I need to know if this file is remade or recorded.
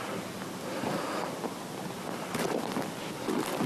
recorded